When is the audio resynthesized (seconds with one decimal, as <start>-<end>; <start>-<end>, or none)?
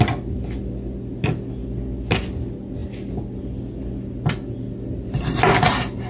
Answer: none